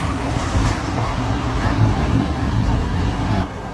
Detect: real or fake fake